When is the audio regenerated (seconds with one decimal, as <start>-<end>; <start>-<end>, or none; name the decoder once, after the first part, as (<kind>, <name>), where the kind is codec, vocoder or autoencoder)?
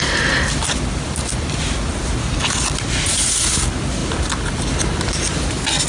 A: none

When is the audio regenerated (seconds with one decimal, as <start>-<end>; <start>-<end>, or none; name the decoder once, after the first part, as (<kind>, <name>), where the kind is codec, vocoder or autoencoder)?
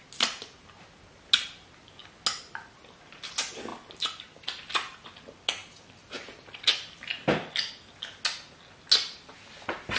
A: 5.6-6.4 (vocoder, BigVGAN v2)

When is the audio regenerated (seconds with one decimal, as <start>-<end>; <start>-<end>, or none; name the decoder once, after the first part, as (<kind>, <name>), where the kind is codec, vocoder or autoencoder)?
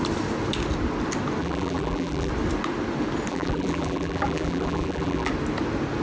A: 1.4-2.3 (vocoder, BigVGAN v2); 3.3-5.3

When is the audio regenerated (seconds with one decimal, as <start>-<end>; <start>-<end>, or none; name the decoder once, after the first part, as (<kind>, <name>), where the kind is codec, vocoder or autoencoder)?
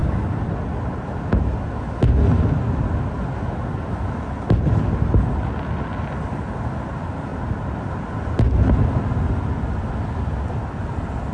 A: 0.0-0.8 (vocoder, BigVGAN v2); 7.3-8.0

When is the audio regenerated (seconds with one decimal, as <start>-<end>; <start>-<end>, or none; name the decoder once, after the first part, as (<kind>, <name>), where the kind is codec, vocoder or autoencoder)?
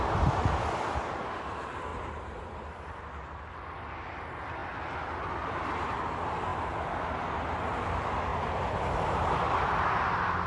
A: 1.9-3.0 (vocoder, BigVGAN v2); 8.3-9.4